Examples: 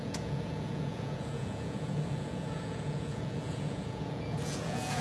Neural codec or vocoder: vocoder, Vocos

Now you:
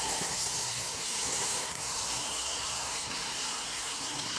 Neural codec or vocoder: codec, SNAC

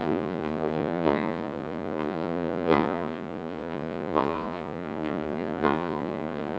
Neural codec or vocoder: vocoder, Vocos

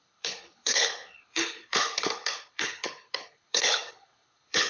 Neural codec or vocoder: codec, HILCodec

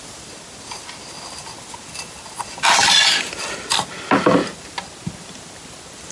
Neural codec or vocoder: none